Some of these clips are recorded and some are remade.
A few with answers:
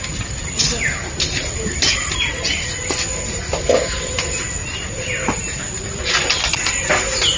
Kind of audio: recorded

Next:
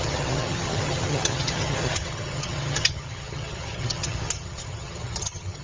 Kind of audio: remade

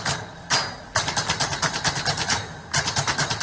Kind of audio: recorded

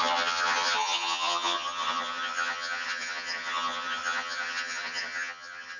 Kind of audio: remade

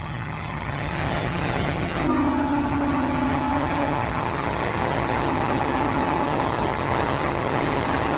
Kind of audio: remade